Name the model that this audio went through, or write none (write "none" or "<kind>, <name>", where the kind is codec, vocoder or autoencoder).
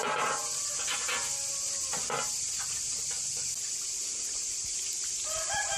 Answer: none